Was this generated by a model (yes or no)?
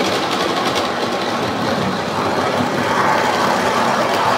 no